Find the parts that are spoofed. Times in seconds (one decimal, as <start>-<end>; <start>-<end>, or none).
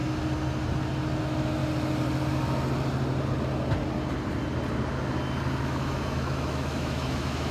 1.2-1.6; 5.6-7.5